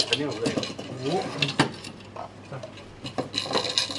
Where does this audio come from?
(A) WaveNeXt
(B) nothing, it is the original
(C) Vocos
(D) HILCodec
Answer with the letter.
B